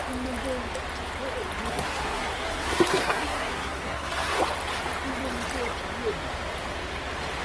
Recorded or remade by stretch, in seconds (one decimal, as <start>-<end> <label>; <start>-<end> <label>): 0.0-1.7 recorded; 1.7-4.4 remade; 4.4-7.4 recorded